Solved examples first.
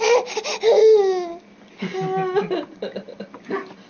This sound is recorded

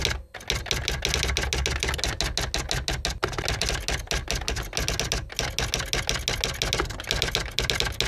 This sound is recorded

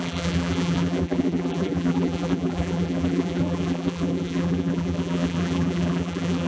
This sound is remade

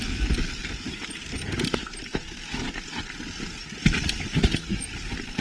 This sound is recorded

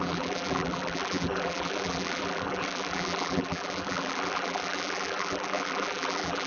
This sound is remade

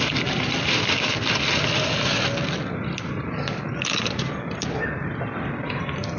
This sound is recorded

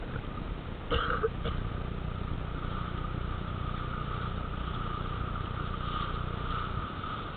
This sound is remade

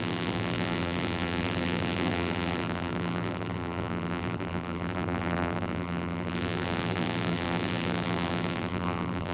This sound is remade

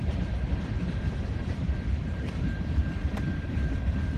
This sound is remade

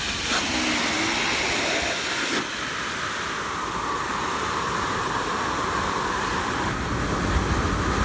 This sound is recorded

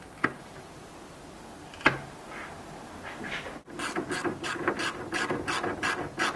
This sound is recorded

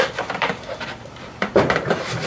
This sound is remade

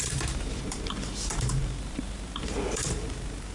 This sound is remade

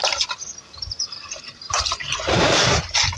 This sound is remade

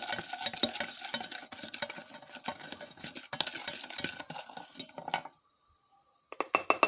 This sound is recorded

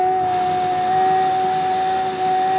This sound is recorded